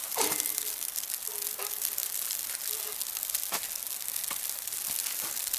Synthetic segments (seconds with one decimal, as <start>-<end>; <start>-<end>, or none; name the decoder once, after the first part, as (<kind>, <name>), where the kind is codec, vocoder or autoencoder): 0.0-1.0 (vocoder, BigVGAN v2)